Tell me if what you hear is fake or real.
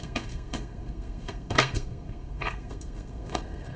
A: fake